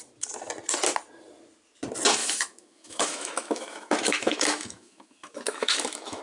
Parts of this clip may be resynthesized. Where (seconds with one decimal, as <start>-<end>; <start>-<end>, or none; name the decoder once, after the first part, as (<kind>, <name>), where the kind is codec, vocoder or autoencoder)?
2.2-6.2 (autoencoder, DAC-VAE)

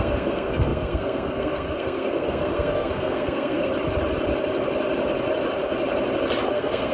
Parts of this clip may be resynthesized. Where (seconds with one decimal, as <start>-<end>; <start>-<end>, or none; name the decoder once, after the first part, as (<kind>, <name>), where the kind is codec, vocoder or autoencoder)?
0.0-3.7 (codec, SNAC); 6.5-6.9

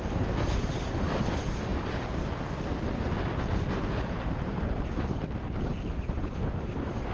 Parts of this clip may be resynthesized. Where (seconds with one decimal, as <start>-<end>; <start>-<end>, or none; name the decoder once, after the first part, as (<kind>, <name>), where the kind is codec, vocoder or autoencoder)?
0.0-1.7 (vocoder, BigVGAN v2); 3.7-7.1

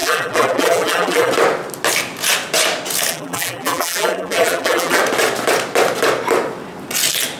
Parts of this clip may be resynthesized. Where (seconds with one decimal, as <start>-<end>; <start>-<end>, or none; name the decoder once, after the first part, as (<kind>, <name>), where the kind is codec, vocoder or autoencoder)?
0.0-1.3 (vocoder, BigVGAN v2); 3.1-5.0

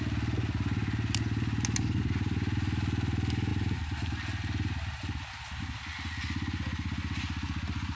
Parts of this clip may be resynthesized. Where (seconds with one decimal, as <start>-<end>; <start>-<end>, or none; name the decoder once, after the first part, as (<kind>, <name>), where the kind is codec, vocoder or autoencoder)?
none

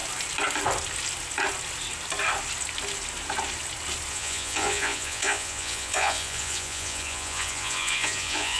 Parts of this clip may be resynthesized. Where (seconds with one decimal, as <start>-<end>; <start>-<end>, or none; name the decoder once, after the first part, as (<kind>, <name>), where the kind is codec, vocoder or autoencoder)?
4.1-8.6 (vocoder, Vocos)

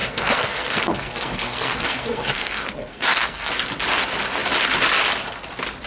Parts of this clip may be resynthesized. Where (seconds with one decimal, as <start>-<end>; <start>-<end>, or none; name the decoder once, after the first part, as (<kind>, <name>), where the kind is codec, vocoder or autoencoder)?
0.0-3.5 (codec, SNAC)